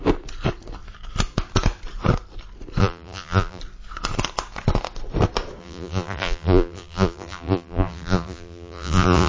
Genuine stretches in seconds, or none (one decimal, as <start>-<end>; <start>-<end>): 0.0-2.8; 3.6-5.6

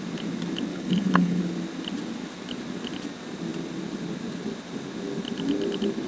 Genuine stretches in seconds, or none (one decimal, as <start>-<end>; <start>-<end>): 0.0-0.7; 1.4-6.1

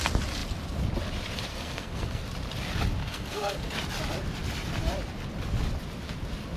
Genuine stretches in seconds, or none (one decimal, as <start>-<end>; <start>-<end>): 0.0-1.5; 2.2-3.0; 3.7-6.6